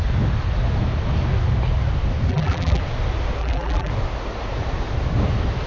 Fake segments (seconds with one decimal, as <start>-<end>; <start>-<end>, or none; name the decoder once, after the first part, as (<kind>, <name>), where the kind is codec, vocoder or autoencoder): 2.3-2.8 (vocoder, BigVGAN v2); 3.4-3.9